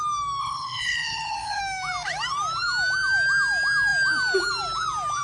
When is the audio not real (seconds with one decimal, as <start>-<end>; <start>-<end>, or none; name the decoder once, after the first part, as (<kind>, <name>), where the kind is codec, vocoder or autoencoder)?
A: 0.4-1.6 (codec, HILCodec)